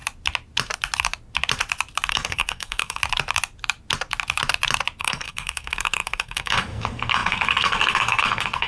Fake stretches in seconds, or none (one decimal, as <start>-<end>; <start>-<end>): 2.1-3.0; 5.0-8.7